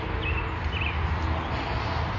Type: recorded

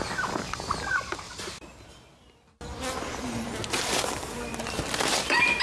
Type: recorded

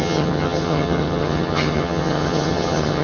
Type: remade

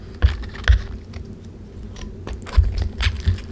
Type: recorded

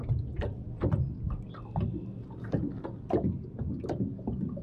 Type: recorded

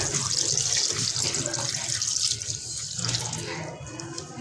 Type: recorded